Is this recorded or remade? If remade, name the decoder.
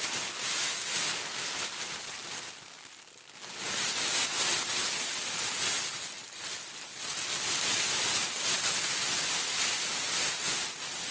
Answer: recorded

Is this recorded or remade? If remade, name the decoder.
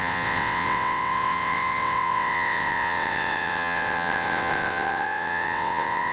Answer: remade, vocoder, WaveNeXt